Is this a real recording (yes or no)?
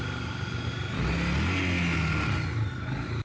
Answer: yes